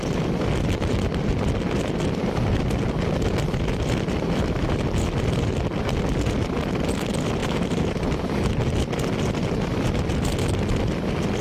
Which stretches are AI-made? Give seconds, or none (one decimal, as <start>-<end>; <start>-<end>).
7.4-8.2